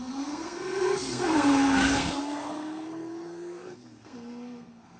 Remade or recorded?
remade